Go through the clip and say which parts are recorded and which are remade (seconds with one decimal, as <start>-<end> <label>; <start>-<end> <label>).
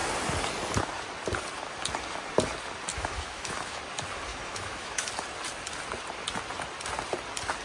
0.0-2.9 recorded; 2.9-3.8 remade; 3.8-4.3 recorded; 4.3-5.1 remade; 5.1-7.6 recorded